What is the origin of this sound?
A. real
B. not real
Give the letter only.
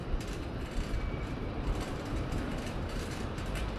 B